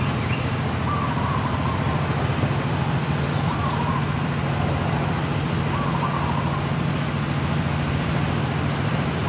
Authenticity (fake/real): real